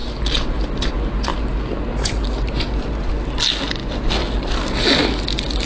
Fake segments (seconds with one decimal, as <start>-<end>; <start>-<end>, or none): none